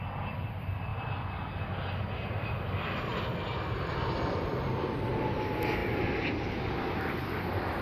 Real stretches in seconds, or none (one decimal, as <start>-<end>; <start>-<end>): 0.0-7.8